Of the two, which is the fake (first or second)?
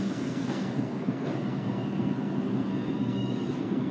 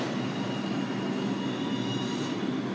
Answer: first